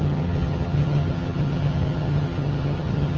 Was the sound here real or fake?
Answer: fake